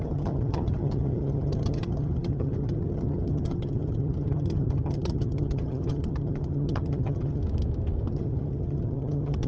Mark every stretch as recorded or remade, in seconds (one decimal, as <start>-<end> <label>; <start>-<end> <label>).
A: 0.0-7.4 remade; 7.4-8.1 recorded; 8.1-9.5 remade